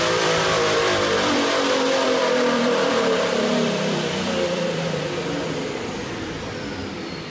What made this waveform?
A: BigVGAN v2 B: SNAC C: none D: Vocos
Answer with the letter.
A